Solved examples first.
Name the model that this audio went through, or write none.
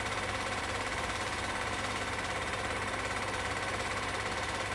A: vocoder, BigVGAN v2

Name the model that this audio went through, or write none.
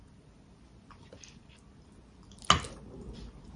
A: none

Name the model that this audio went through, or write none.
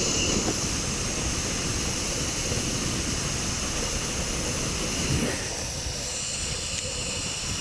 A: none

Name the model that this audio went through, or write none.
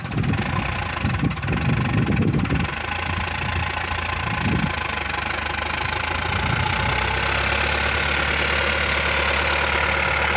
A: none